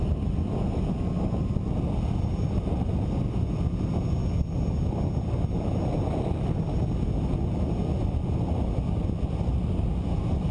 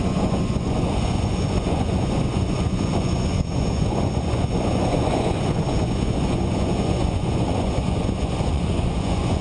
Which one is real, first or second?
first